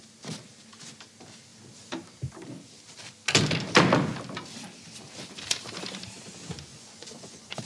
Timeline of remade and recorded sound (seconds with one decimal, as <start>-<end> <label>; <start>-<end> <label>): 0.0-6.7 recorded; 6.7-7.6 remade